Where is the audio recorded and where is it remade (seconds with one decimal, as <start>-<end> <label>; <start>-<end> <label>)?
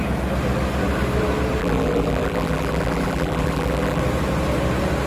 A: 0.0-1.6 recorded; 1.6-4.0 remade; 4.0-5.1 recorded